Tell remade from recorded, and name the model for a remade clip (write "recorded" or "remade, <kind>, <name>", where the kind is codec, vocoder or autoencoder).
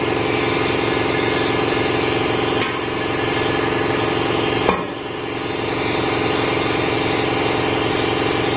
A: recorded